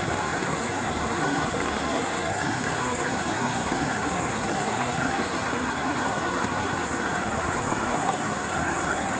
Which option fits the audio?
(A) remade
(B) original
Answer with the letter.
A